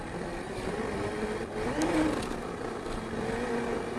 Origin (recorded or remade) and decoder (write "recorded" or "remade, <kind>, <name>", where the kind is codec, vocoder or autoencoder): recorded